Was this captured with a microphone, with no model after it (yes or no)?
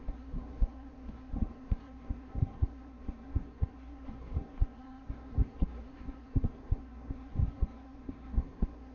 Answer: no